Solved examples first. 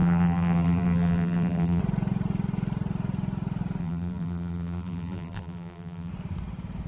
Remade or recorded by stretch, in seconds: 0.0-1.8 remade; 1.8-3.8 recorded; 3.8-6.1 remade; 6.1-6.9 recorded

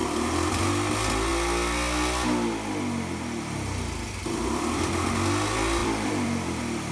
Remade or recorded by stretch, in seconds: 0.0-0.6 remade; 0.6-5.8 recorded; 5.8-6.9 remade

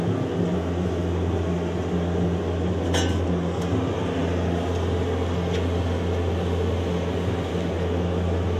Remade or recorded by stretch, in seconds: 0.0-8.6 recorded

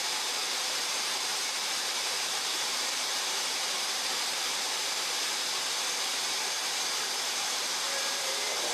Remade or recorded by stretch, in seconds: 0.0-8.7 remade

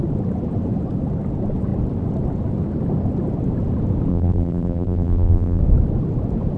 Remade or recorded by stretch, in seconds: 0.0-4.1 recorded; 4.1-5.6 remade; 5.6-6.6 recorded

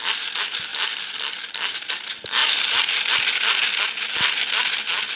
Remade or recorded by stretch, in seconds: 0.0-0.7 recorded; 0.7-2.0 remade; 2.0-5.2 recorded